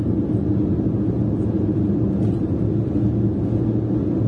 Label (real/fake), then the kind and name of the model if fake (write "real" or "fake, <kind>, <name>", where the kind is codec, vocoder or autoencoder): real